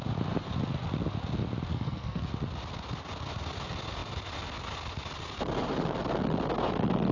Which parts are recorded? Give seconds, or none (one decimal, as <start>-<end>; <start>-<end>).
0.0-1.7; 2.2-7.1